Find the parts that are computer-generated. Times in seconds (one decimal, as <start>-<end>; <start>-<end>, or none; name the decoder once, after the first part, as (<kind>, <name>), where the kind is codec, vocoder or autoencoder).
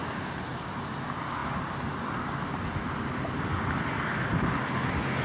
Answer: none